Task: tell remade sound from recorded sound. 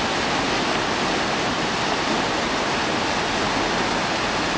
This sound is recorded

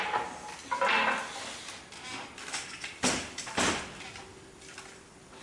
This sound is recorded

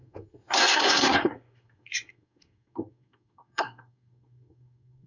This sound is remade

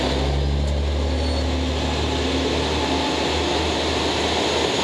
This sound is recorded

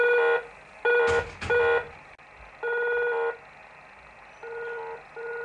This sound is recorded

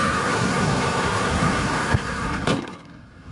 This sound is remade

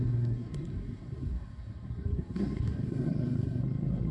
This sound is remade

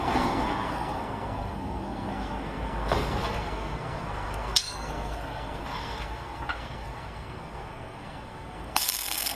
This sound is remade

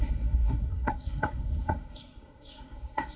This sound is remade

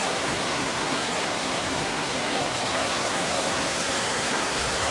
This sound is remade